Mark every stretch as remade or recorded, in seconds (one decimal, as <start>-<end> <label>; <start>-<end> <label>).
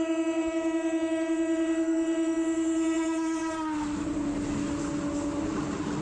0.0-3.4 remade; 3.4-6.0 recorded